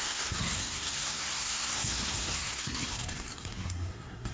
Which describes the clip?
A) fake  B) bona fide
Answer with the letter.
A